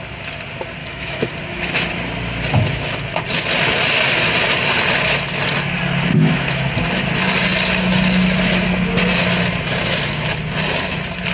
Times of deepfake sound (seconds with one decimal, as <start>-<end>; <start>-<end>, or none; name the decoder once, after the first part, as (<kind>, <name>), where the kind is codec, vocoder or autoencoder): 0.8-1.3 (autoencoder, DAC-VAE); 6.1-6.7